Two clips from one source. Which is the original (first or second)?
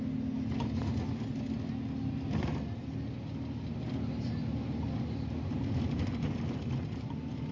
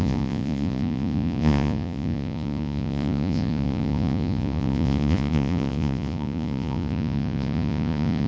first